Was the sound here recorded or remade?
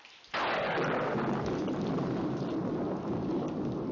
recorded